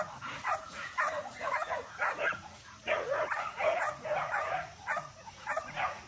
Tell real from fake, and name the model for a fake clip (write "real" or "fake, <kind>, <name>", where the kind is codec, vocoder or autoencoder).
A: fake, vocoder, Vocos